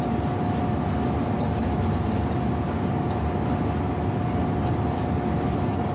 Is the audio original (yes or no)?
yes